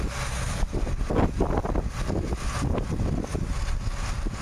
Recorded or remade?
recorded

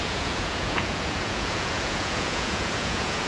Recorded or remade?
remade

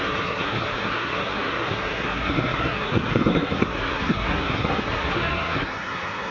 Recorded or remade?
remade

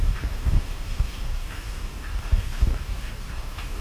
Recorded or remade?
remade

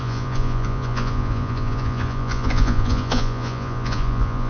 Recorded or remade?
remade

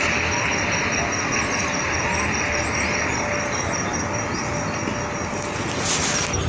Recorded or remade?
recorded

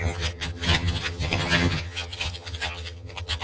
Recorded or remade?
remade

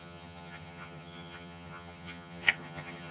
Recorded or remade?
remade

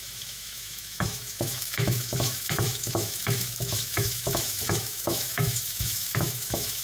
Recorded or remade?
remade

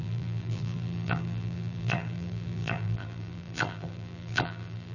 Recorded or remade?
remade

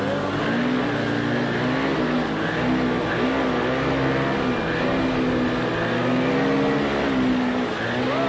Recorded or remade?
recorded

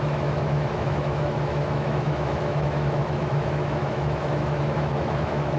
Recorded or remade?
remade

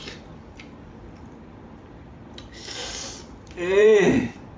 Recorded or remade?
remade